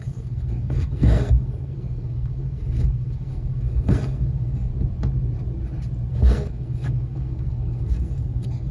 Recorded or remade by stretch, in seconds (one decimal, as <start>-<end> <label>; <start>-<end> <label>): 0.0-4.7 remade; 4.7-6.1 recorded; 6.1-8.7 remade